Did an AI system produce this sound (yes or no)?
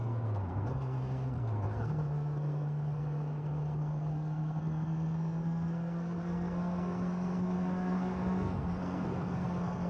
yes